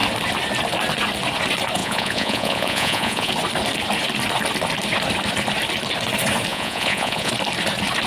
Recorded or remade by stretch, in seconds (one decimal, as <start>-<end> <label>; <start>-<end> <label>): 0.0-1.8 recorded; 1.8-3.3 remade; 3.3-6.5 recorded; 6.5-7.3 remade; 7.3-8.1 recorded